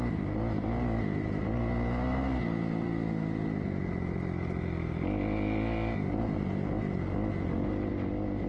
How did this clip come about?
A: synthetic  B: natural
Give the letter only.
B